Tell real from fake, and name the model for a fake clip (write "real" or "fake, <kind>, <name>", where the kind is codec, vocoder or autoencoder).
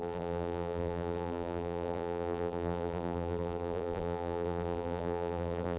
fake, vocoder, BigVGAN v2